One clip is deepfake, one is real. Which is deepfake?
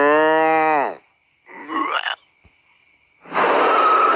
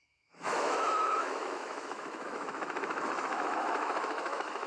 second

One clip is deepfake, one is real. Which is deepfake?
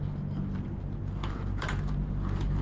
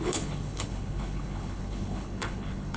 second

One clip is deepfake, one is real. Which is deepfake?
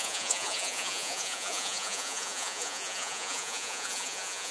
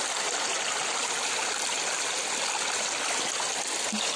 first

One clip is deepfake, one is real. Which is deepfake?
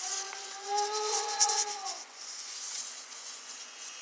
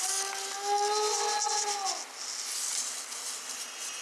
first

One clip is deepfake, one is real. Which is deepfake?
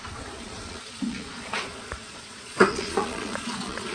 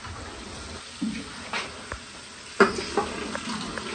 first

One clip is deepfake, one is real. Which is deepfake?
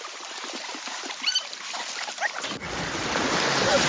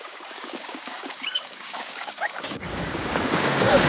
second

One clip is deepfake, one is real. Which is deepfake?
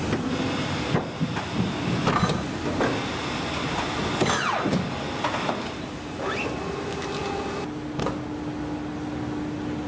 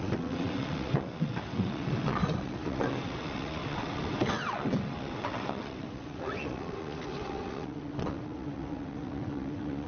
second